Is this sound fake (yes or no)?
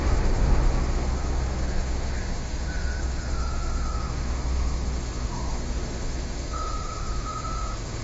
yes